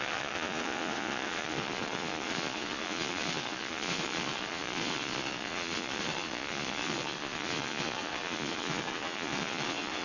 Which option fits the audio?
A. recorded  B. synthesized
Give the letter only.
B